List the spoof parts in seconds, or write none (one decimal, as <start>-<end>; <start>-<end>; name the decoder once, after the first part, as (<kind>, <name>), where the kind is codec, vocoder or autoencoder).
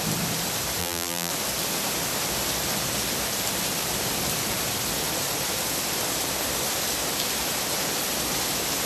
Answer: 0.8-1.3 (vocoder, BigVGAN v2)